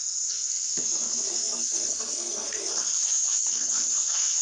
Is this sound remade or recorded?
remade